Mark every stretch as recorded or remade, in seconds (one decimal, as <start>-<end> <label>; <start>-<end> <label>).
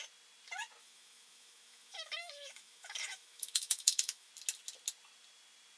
0.0-0.8 recorded; 0.8-4.3 remade; 4.3-5.8 recorded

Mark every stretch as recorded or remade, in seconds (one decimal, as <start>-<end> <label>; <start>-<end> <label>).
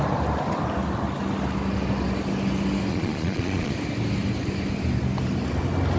0.0-2.9 recorded; 2.9-3.7 remade; 3.7-6.0 recorded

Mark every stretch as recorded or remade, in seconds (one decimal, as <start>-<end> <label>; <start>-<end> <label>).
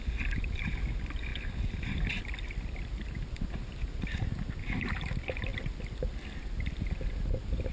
0.0-1.3 recorded; 1.3-2.3 remade; 2.3-5.5 recorded; 5.5-6.1 remade; 6.1-7.7 recorded